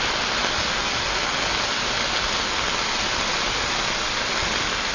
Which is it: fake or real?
real